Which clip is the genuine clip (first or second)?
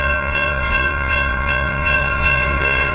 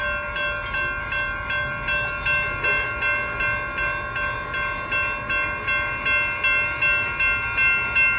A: second